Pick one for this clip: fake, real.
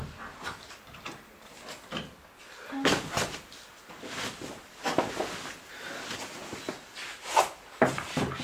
real